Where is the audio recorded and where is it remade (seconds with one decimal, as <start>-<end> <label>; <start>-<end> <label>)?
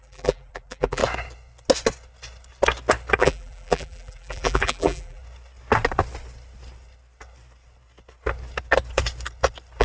0.0-1.0 remade; 1.0-3.2 recorded; 3.2-5.2 remade; 5.2-9.8 recorded